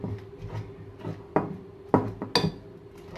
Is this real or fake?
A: real